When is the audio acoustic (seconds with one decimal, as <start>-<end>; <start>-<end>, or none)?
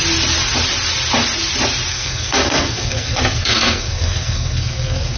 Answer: 0.0-1.9